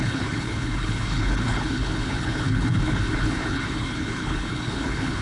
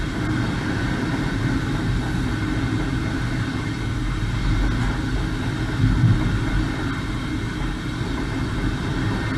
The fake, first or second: first